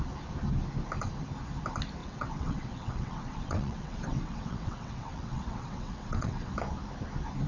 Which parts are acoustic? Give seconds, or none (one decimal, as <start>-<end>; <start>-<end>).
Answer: 0.0-2.0; 6.5-7.5